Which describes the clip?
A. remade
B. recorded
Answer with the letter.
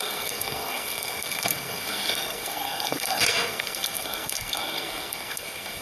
A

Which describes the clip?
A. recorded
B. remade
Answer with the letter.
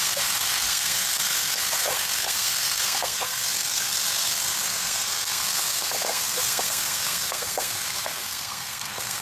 B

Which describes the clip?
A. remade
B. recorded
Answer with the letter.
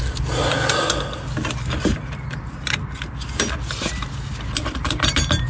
B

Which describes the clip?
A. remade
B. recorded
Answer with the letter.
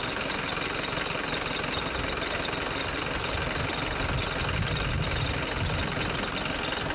B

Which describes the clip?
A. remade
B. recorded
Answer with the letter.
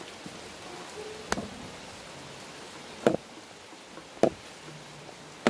B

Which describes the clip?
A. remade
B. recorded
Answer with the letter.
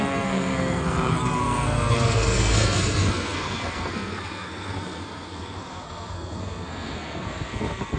A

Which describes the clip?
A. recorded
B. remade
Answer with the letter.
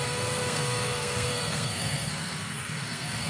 B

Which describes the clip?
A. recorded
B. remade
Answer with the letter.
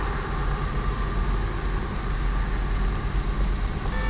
A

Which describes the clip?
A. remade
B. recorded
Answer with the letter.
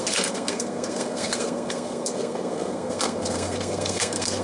A